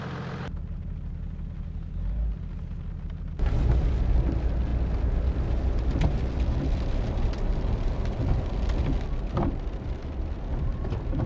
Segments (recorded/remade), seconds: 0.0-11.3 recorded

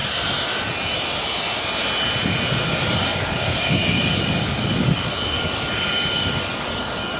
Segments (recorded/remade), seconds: 0.0-2.7 recorded; 2.7-7.2 remade

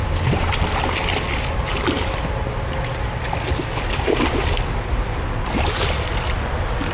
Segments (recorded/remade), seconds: 0.0-0.6 remade; 0.6-6.9 recorded